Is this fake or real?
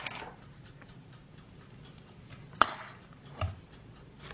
real